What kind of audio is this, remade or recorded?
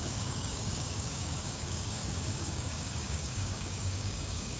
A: remade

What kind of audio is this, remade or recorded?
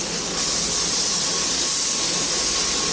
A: recorded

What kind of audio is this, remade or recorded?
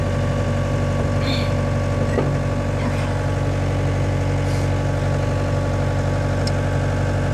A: recorded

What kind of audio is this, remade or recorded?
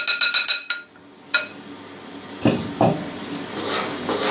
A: recorded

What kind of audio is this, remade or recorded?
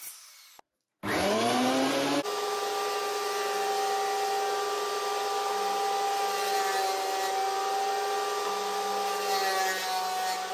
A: recorded